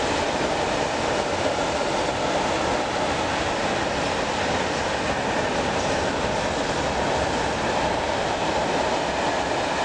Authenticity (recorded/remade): recorded